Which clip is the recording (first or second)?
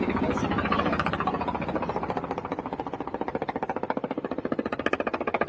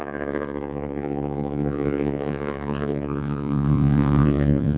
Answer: first